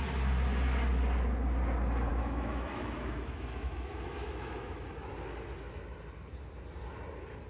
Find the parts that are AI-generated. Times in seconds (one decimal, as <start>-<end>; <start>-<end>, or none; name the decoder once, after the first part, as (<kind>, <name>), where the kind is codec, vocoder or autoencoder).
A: 2.1-5.1 (autoencoder, DAC-VAE)